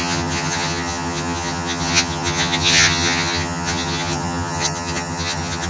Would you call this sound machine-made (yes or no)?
yes